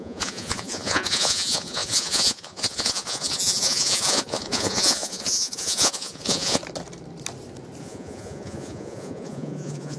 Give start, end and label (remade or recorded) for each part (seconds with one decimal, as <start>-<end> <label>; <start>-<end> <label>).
0.0-6.6 remade; 6.6-7.8 recorded; 7.8-10.0 remade